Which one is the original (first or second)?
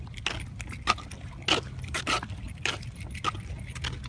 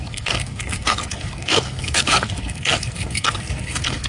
first